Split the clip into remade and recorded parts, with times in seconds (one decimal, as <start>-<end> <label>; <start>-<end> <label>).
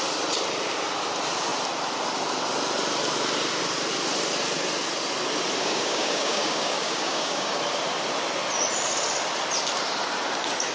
0.0-5.6 recorded; 5.6-7.6 remade; 7.6-10.7 recorded